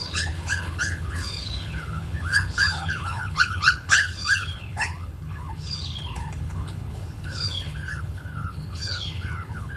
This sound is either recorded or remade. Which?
remade